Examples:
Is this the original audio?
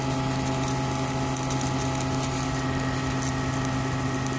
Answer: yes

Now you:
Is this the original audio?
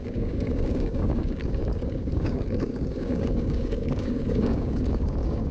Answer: no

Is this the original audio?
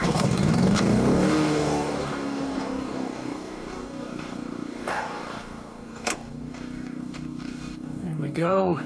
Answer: no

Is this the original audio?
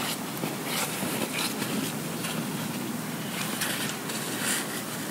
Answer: yes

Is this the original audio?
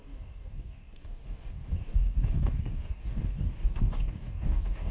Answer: no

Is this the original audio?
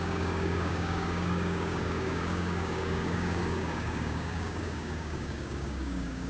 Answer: no